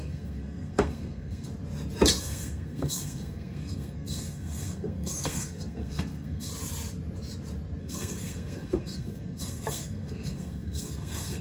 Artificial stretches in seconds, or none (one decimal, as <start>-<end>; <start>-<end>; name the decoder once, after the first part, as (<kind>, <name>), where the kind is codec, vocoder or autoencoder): 0.0-1.5 (codec, SNAC); 2.2-6.5; 7.8-11.4